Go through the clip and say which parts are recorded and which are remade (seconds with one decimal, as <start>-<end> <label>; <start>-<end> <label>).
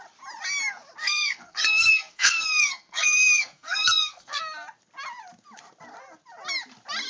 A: 0.0-1.0 recorded; 1.0-4.4 remade; 4.4-7.1 recorded